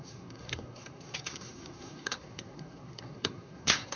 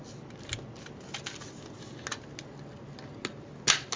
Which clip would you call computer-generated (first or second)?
first